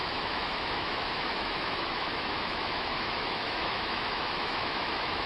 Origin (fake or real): fake